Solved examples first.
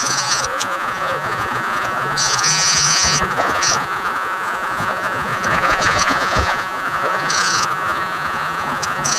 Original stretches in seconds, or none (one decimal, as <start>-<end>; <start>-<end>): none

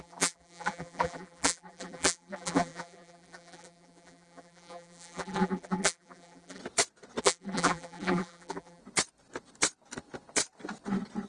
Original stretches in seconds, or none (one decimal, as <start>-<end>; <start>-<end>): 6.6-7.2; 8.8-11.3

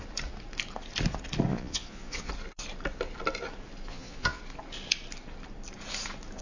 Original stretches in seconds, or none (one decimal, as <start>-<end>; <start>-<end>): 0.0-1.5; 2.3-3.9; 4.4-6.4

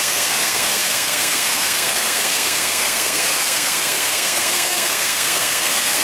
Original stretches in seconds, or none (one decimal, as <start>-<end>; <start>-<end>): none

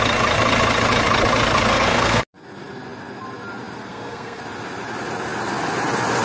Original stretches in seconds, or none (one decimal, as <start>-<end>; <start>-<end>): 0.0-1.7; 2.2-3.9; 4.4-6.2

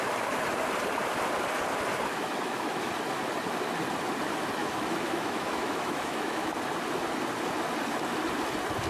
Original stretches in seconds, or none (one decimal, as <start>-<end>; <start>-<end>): 0.0-2.1; 2.9-4.6; 6.5-8.9

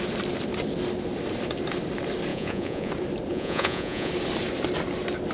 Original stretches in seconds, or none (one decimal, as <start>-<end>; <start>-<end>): 0.0-2.3; 2.9-3.3; 4.1-5.3

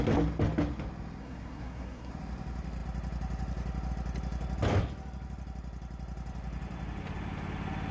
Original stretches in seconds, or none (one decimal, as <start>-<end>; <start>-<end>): 0.0-1.2; 2.1-7.9